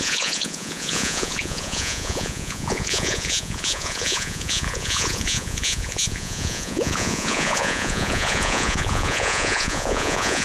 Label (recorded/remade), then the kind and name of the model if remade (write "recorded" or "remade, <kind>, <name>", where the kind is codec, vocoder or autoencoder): remade, vocoder, Vocos